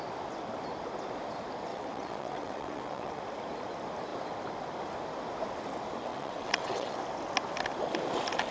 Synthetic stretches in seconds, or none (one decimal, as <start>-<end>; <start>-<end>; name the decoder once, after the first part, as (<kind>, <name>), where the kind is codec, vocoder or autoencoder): 1.7-3.2 (vocoder, WaveNeXt); 6.1-7.0